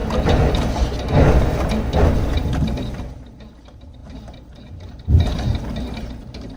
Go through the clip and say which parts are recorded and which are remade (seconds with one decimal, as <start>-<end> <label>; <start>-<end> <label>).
0.0-2.8 recorded; 2.8-6.6 remade